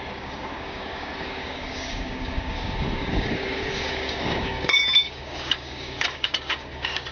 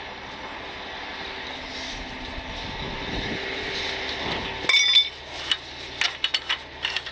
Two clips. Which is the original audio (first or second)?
second